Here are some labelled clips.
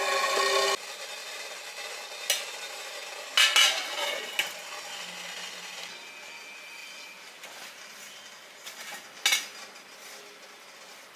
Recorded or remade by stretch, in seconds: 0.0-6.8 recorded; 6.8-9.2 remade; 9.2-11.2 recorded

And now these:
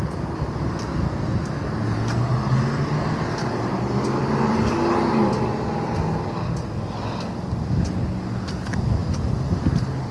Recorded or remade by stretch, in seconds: 0.0-10.1 recorded

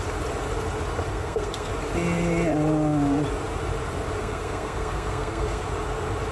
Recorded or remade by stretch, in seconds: 0.0-1.1 recorded; 1.1-1.7 remade; 1.7-4.2 recorded; 4.2-5.6 remade; 5.6-6.3 recorded

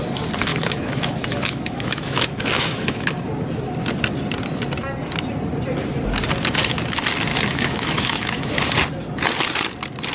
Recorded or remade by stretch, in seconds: 0.0-0.5 recorded; 0.5-3.1 remade; 3.1-7.3 recorded; 7.3-8.5 remade; 8.5-10.1 recorded

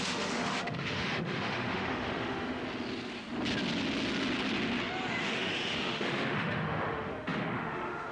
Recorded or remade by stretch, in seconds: 0.0-2.6 remade; 2.6-5.2 recorded; 5.2-8.1 remade

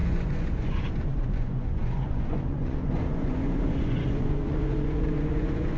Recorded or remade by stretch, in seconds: 0.0-5.8 remade

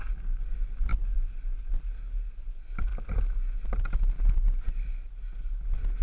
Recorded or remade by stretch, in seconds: 0.0-6.0 recorded